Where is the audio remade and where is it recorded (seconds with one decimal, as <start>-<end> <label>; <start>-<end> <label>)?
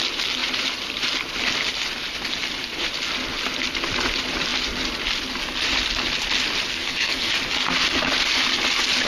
0.0-6.7 recorded; 6.7-7.3 remade; 7.3-9.1 recorded